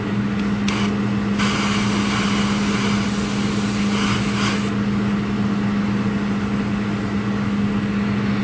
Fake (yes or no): no